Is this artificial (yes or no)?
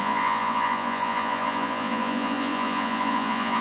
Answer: yes